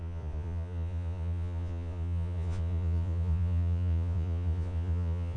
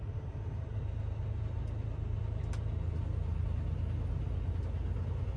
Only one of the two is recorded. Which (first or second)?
second